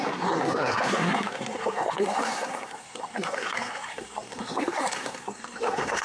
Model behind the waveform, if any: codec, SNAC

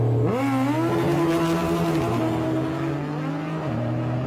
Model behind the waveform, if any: none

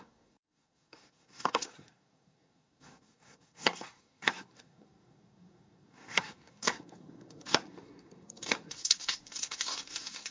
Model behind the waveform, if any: codec, SNAC